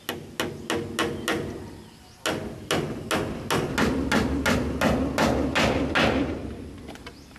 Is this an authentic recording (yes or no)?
yes